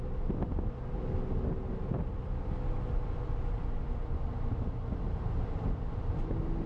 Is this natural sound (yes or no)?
yes